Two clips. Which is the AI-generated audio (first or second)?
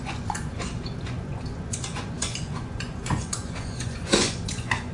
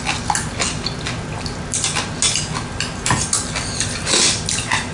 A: first